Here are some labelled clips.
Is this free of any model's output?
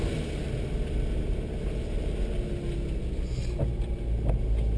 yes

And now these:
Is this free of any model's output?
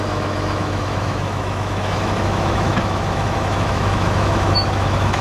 no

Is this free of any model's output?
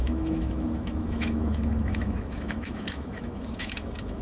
no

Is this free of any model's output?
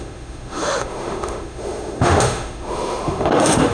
no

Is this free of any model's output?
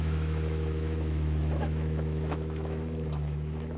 no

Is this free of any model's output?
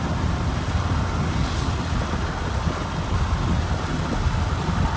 yes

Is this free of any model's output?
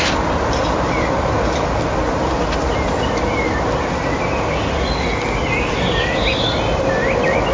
yes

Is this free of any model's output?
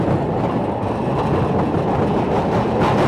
yes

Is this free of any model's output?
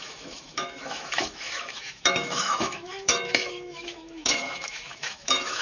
no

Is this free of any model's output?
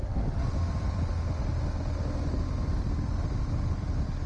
yes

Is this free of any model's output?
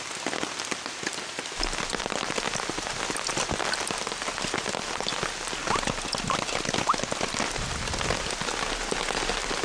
yes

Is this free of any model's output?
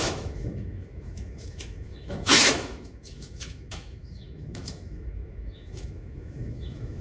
no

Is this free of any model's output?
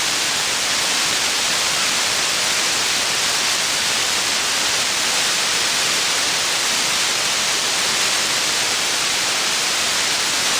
yes